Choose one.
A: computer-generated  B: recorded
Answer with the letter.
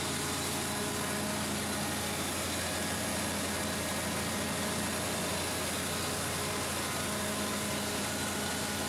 B